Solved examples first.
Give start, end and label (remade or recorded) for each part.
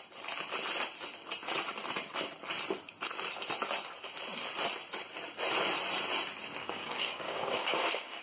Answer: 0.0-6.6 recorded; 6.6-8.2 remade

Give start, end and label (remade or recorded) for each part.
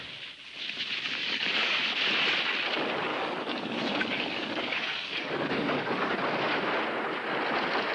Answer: 0.0-1.2 recorded; 1.2-1.8 remade; 1.8-3.1 recorded; 3.1-6.1 remade; 6.1-7.9 recorded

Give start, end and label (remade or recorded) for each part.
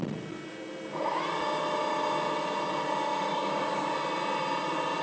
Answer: 0.0-3.3 recorded; 3.3-3.9 remade; 3.9-5.0 recorded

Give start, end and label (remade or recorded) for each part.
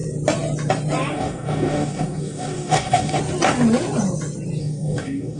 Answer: 0.0-1.1 recorded; 1.1-3.2 remade; 3.2-4.6 recorded; 4.6-5.4 remade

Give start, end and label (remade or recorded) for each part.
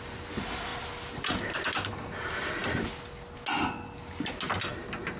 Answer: 0.0-5.2 recorded